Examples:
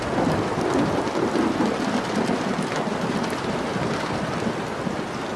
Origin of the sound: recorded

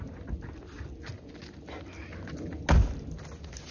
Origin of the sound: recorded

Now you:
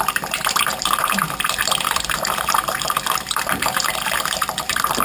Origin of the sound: remade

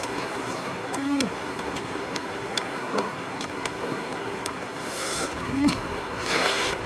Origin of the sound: remade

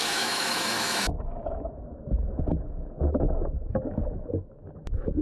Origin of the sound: remade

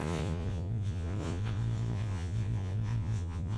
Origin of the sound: remade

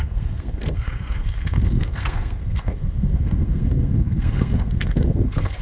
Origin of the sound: remade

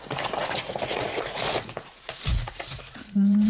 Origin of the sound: remade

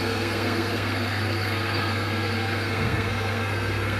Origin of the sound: remade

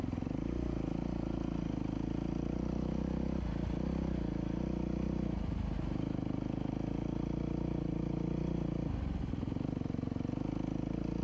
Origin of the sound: recorded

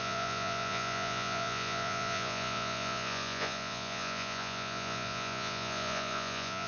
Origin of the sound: remade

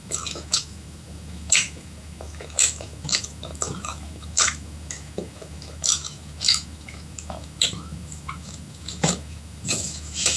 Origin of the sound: remade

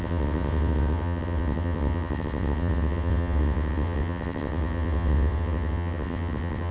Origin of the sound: remade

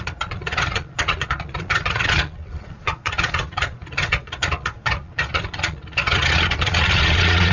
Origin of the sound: remade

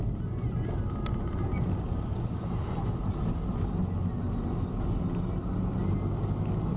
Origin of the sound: recorded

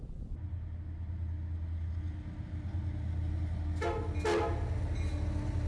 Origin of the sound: recorded